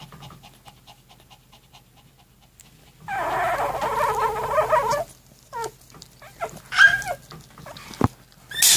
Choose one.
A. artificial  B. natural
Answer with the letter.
B